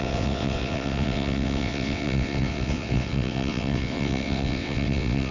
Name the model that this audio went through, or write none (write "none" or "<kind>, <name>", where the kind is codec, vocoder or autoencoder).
vocoder, WaveNeXt